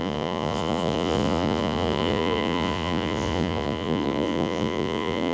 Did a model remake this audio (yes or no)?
yes